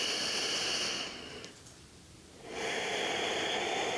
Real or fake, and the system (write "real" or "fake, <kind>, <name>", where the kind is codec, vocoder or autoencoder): real